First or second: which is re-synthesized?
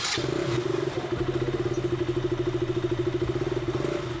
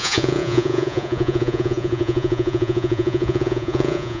second